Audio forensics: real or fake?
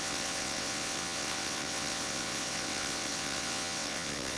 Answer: fake